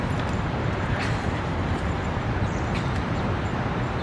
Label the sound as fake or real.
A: fake